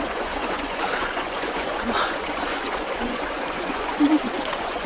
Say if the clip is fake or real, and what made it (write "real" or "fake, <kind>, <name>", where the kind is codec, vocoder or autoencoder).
fake, vocoder, Vocos